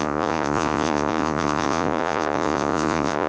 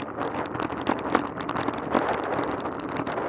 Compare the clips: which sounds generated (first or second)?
first